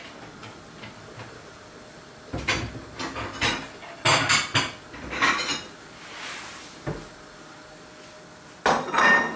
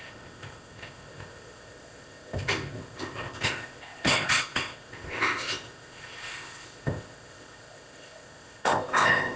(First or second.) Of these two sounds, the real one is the first